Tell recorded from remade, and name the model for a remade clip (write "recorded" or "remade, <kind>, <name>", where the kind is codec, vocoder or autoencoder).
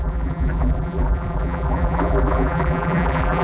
remade, vocoder, BigVGAN v2